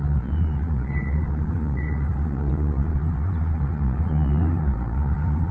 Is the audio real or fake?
fake